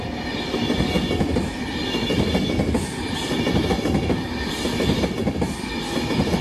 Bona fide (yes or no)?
yes